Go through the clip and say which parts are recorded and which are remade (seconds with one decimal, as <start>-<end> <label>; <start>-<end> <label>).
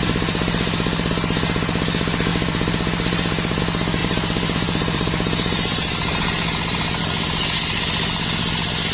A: 0.0-1.1 remade; 1.1-2.3 recorded; 2.3-3.6 remade; 3.6-4.0 recorded; 4.0-7.0 remade; 7.0-8.9 recorded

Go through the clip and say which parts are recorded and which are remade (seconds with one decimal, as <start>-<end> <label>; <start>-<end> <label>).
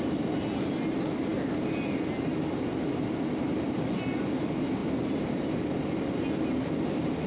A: 0.0-4.8 recorded; 4.8-5.6 remade; 5.6-7.3 recorded